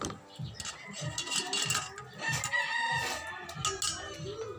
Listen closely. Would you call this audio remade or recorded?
recorded